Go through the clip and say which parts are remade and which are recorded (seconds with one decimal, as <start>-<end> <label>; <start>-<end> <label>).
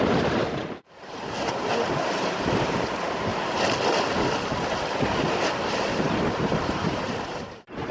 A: 0.0-3.3 remade; 3.3-5.4 recorded; 5.4-7.9 remade